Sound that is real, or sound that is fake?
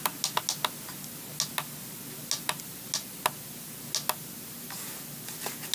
real